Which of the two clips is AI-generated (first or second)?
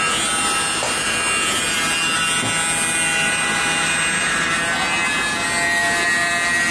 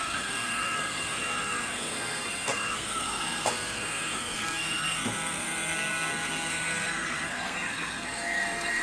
second